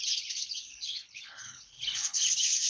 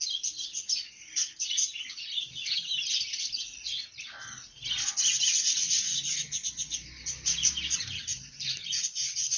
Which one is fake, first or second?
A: first